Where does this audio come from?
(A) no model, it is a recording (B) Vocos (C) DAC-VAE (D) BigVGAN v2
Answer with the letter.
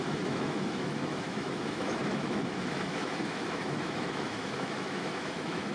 C